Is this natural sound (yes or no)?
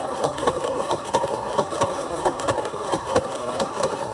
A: no